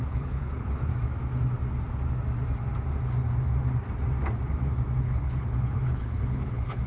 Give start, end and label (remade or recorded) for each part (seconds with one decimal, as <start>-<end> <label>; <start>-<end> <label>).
0.0-0.9 remade; 0.9-5.0 recorded; 5.0-6.9 remade